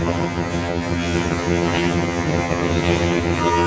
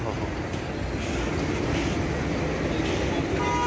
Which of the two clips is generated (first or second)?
first